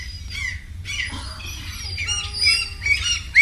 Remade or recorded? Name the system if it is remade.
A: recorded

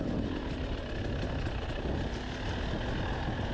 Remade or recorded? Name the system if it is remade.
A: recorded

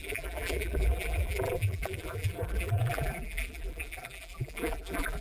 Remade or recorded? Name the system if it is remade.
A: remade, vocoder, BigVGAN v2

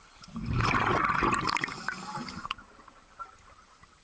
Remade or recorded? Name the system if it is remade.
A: recorded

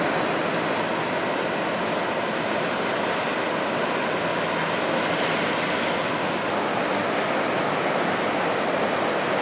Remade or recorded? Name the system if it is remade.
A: recorded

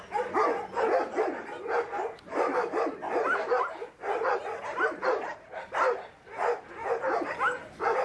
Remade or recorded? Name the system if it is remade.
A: recorded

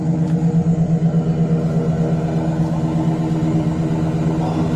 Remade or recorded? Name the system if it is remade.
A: recorded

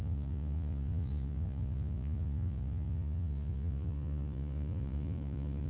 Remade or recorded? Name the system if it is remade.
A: remade, vocoder, Vocos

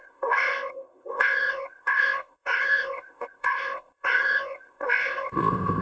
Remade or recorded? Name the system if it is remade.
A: remade, codec, ZipCodec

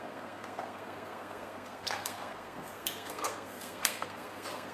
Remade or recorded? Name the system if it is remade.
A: remade, codec, SNAC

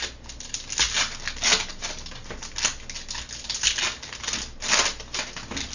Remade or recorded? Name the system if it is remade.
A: recorded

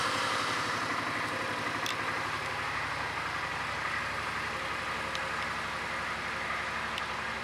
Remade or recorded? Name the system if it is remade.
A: remade, vocoder, BigVGAN v2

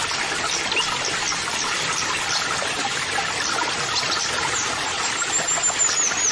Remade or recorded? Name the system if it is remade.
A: remade, vocoder, BigVGAN v2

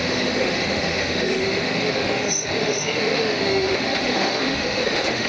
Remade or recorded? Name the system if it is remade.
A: remade, autoencoder, DAC-VAE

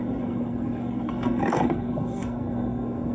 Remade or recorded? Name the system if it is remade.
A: remade, codec, SNAC